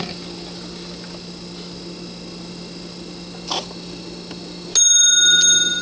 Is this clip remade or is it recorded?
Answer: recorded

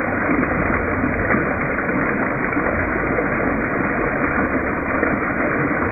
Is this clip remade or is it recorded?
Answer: recorded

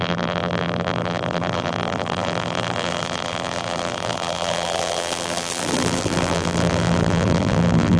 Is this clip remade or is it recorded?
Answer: remade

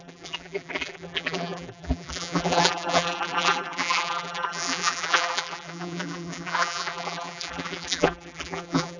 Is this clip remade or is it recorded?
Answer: remade